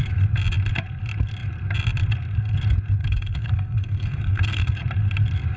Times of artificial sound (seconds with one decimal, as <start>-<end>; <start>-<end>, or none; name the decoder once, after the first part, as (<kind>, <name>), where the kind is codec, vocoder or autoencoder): 3.0-4.7 (codec, SNAC)